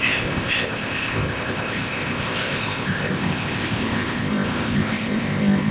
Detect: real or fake fake